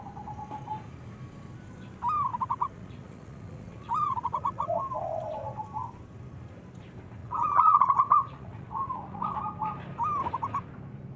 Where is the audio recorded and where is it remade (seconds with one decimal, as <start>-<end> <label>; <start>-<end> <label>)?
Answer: 0.0-2.3 recorded; 2.3-4.8 remade; 4.8-7.2 recorded; 7.2-9.4 remade; 9.4-11.2 recorded